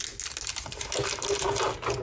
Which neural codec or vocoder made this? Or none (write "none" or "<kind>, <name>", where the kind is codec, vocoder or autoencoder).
none